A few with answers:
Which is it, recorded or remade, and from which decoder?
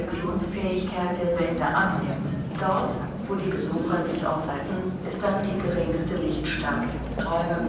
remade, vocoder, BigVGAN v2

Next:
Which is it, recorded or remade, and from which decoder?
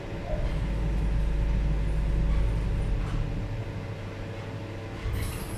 recorded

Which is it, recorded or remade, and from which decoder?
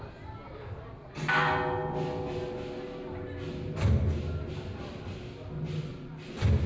recorded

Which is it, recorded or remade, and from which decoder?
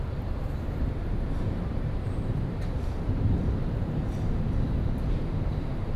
remade, vocoder, BigVGAN v2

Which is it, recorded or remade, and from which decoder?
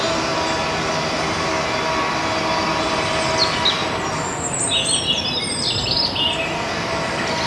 recorded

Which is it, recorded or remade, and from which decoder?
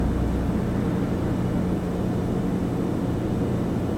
recorded